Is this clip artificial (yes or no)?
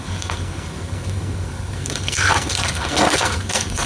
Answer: yes